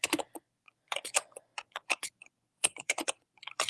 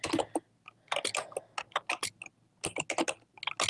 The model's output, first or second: first